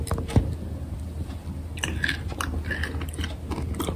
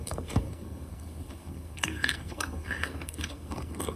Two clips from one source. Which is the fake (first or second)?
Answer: second